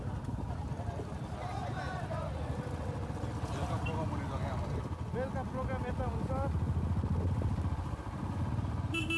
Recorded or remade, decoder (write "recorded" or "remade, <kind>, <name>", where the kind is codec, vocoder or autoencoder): recorded